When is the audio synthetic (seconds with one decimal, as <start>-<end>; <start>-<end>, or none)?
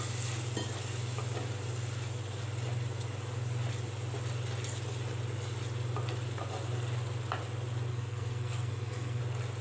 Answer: 7.9-9.2